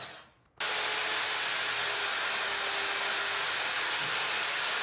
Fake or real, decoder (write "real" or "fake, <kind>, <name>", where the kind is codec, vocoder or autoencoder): real